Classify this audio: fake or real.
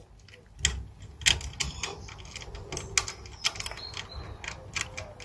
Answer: real